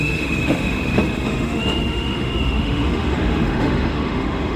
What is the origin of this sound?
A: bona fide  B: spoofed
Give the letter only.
B